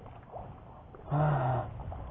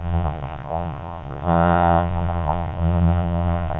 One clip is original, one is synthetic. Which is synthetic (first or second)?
second